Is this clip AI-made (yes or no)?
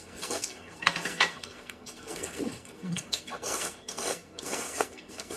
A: yes